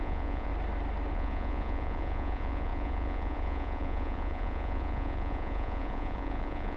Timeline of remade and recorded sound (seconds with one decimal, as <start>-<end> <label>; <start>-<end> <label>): 0.0-0.5 remade; 0.5-1.1 recorded; 1.1-6.8 remade

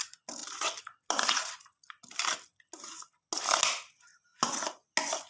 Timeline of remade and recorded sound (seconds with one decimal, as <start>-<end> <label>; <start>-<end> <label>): 0.0-5.3 recorded

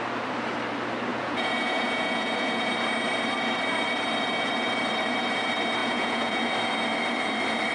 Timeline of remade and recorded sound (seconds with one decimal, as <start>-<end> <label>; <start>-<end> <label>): 0.0-1.1 recorded; 1.1-2.7 remade; 2.7-5.8 recorded; 5.8-6.4 remade; 6.4-7.7 recorded

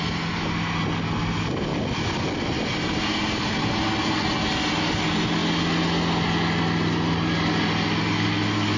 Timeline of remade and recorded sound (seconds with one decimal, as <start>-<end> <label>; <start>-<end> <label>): 0.0-8.8 recorded